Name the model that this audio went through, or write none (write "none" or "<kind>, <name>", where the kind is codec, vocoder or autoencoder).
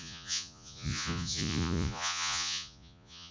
vocoder, Vocos